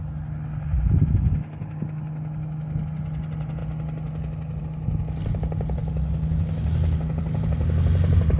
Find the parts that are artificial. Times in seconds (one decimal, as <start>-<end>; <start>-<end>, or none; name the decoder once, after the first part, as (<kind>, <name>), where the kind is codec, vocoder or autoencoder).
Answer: none